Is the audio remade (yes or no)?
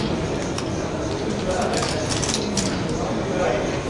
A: no